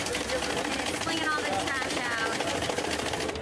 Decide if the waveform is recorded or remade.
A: recorded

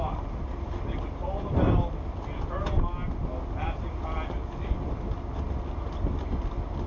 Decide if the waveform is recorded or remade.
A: recorded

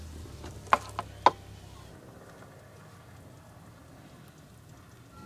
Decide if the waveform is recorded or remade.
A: recorded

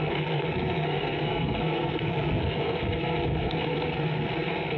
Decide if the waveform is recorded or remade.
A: remade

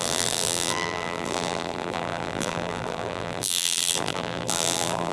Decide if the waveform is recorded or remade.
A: remade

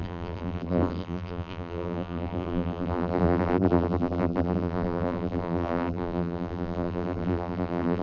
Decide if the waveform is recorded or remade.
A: remade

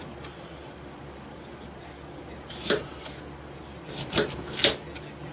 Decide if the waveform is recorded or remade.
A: recorded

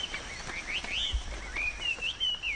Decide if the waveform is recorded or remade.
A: recorded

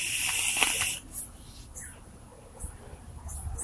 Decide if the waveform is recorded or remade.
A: recorded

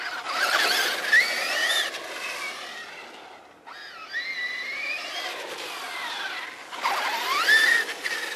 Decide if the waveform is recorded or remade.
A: recorded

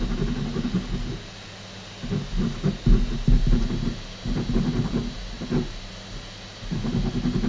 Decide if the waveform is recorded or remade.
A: recorded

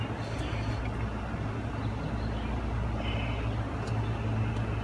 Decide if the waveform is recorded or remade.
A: recorded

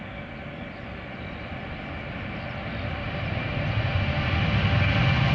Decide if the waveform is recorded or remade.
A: recorded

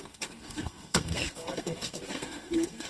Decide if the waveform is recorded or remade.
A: remade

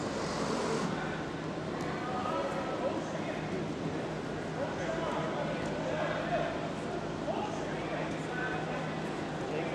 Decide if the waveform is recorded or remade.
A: recorded